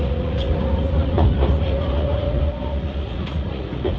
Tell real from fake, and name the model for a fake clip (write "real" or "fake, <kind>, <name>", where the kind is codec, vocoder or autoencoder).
fake, vocoder, Vocos